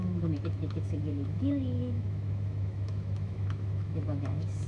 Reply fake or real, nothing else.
fake